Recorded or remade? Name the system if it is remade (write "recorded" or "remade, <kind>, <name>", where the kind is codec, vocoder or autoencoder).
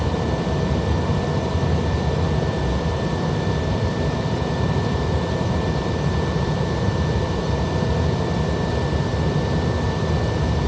remade, vocoder, BigVGAN v2